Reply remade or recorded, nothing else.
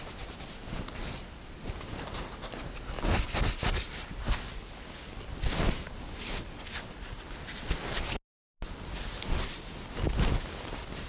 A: recorded